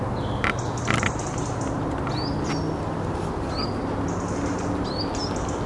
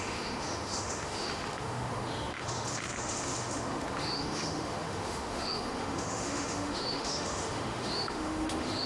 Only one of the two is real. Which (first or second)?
first